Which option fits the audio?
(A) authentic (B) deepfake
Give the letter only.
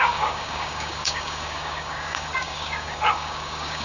B